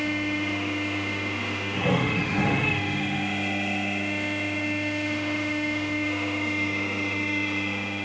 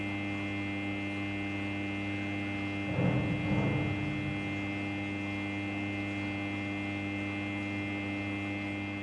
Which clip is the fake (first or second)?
first